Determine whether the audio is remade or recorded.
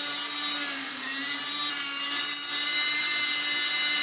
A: recorded